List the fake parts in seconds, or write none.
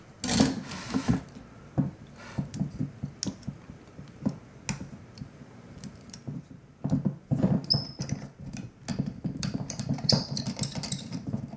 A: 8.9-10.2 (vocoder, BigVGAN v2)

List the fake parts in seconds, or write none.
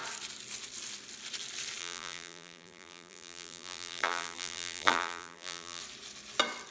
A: 1.8-5.8 (vocoder, BigVGAN v2)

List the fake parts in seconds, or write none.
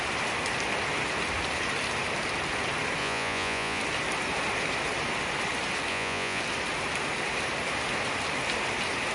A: 3.0-3.8 (vocoder, Vocos); 5.9-6.4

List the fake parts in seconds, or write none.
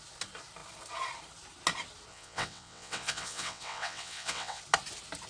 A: 2.1-4.6 (vocoder, WaveNeXt)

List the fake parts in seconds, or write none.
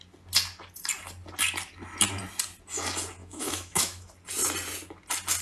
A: 3.2-4.1 (autoencoder, DAC-VAE)